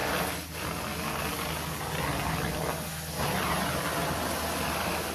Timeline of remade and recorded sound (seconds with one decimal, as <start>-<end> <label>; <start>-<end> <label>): 0.0-5.1 recorded